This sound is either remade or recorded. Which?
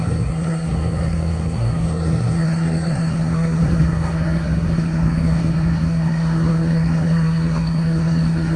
remade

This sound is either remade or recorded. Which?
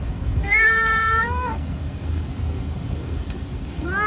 remade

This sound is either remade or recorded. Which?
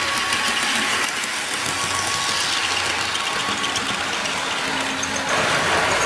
recorded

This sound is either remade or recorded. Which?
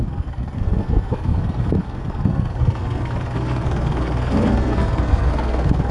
remade